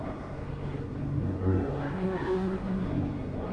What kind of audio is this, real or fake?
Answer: fake